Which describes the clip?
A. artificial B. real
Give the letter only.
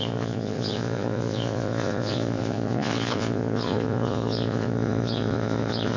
A